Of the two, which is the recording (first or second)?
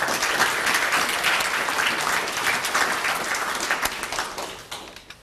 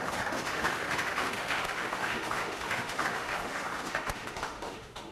first